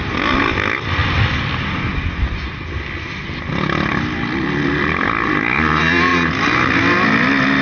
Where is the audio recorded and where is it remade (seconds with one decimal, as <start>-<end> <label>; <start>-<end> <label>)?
0.0-7.6 recorded